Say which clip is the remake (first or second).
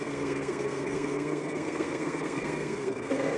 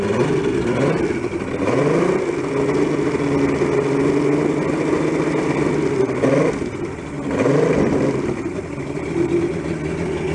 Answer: first